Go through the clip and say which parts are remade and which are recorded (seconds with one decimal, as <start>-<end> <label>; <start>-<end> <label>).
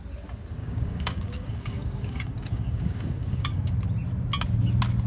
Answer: 0.0-0.6 recorded; 0.6-3.7 remade; 3.7-5.1 recorded